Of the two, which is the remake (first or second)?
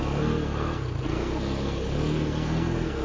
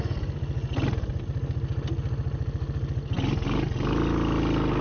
first